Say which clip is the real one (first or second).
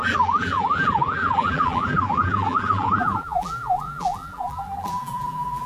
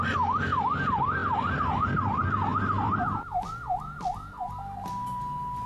second